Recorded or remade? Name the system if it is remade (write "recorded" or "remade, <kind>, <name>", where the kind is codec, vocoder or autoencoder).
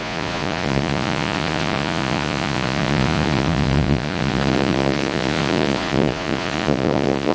remade, vocoder, Vocos